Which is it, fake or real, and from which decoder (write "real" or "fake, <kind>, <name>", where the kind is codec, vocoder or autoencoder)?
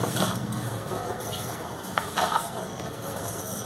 fake, codec, SNAC